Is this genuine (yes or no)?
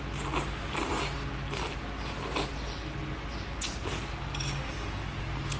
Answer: yes